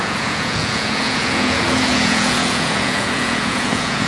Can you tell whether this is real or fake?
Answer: fake